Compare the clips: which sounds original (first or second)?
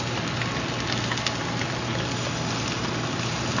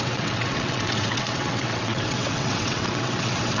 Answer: first